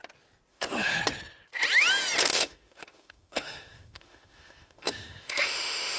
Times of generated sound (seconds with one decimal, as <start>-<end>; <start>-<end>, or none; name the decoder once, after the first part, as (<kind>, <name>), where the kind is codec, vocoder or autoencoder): 0.5-1.0 (autoencoder, DAC-VAE); 2.3-6.0